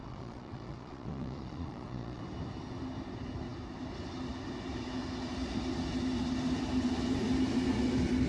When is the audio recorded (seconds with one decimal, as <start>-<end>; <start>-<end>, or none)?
2.2-8.3